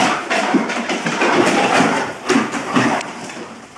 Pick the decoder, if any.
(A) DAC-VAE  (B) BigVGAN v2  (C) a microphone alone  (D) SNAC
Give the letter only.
B